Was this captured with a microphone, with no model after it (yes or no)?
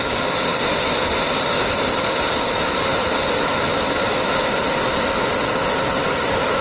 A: yes